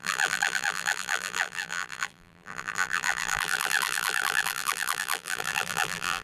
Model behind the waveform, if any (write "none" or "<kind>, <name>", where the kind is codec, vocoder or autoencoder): vocoder, BigVGAN v2